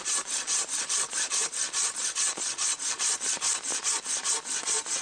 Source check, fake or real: real